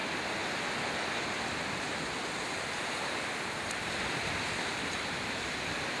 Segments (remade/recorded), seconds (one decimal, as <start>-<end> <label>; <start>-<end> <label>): 0.0-6.0 recorded